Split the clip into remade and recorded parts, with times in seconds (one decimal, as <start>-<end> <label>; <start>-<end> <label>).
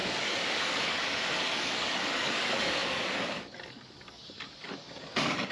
0.0-5.5 remade